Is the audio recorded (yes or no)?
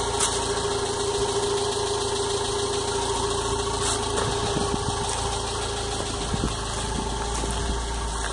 yes